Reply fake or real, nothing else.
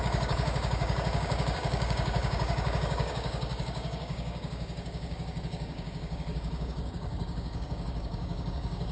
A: fake